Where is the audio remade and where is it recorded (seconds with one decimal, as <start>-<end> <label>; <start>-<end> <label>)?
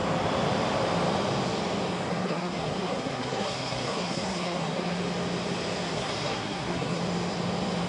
0.0-2.1 recorded; 2.1-5.0 remade; 5.0-5.9 recorded; 5.9-7.0 remade; 7.0-7.9 recorded